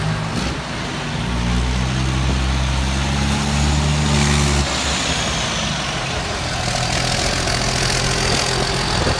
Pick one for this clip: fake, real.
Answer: real